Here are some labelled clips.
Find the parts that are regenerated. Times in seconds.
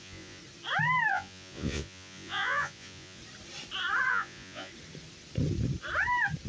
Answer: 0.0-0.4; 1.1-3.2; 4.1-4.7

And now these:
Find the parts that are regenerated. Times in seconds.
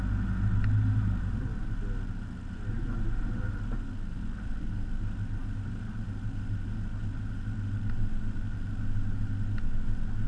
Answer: none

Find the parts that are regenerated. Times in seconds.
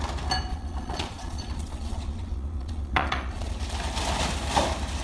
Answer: 0.5-3.5